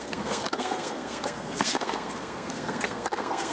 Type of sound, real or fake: fake